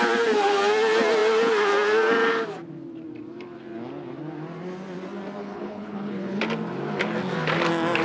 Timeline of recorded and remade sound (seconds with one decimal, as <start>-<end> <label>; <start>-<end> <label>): 0.0-5.4 recorded; 5.4-6.4 remade; 6.4-8.0 recorded

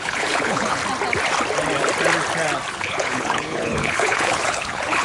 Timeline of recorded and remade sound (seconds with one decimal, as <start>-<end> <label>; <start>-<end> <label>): 0.0-0.8 remade; 0.8-2.7 recorded; 2.7-5.0 remade